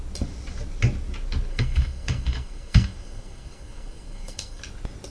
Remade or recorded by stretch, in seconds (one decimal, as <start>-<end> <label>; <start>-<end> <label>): 0.0-1.5 recorded; 1.5-4.6 remade; 4.6-5.1 recorded